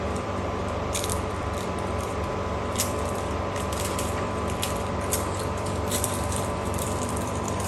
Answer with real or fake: fake